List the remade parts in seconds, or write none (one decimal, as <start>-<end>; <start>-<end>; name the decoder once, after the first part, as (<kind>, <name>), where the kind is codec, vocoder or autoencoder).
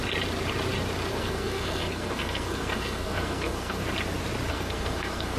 1.1-3.8 (codec, SNAC); 4.5-5.4